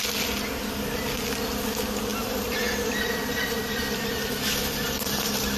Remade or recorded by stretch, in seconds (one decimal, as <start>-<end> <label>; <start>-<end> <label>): 0.0-2.1 recorded; 2.1-5.6 remade